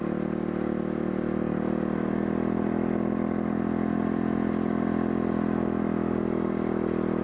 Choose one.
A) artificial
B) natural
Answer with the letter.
B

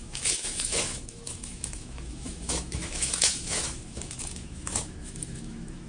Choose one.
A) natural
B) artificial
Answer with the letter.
B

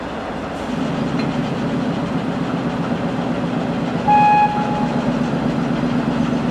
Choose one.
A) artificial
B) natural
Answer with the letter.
B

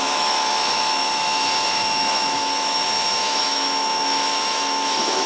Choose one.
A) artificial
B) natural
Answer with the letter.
A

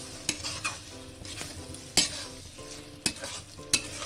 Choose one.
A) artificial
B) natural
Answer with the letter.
B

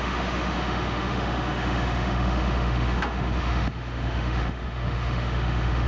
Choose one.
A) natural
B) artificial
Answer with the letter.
B